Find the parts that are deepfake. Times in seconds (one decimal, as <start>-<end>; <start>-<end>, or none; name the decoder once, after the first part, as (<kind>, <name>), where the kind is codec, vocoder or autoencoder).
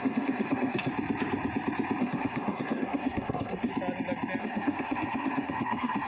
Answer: 0.0-0.9 (codec, SNAC); 2.0-3.7; 4.4-6.1